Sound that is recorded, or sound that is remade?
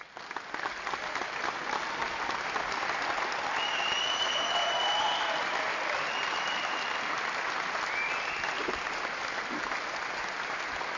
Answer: recorded